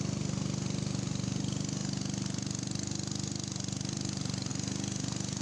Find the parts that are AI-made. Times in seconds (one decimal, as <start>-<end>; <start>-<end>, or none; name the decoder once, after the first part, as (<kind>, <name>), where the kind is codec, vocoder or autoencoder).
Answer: none